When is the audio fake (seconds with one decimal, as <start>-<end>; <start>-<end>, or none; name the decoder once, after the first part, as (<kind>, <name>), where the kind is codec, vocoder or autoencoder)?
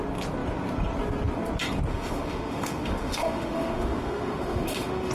1.9-5.1 (autoencoder, DAC-VAE)